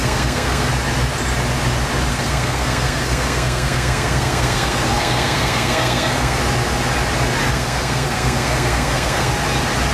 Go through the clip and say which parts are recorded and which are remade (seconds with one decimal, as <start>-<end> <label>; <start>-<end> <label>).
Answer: 0.0-0.7 remade; 0.7-2.1 recorded; 2.1-6.4 remade; 6.4-7.5 recorded; 7.5-9.3 remade; 9.3-9.9 recorded